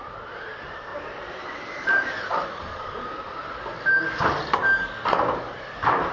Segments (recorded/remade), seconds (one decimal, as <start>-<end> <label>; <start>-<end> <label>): 0.0-3.4 remade; 3.4-6.1 recorded

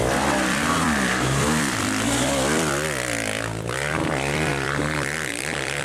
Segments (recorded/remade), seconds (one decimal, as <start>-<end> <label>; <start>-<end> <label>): 0.0-5.8 remade

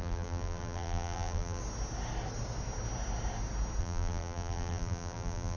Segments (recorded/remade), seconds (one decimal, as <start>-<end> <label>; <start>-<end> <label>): 0.0-1.6 remade; 1.6-3.8 recorded; 3.8-5.6 remade